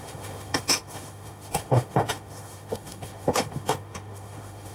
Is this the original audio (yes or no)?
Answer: no